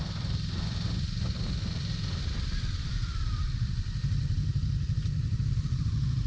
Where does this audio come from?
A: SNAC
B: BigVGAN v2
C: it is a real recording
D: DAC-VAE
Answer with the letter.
B